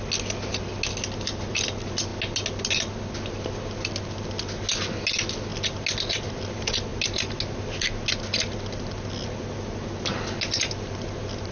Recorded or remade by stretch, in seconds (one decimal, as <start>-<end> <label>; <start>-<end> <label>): 0.0-11.5 recorded